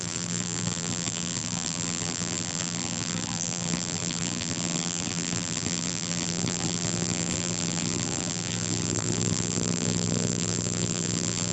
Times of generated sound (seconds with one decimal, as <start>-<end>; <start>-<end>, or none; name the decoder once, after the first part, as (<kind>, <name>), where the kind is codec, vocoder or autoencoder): 0.0-11.5 (vocoder, BigVGAN v2)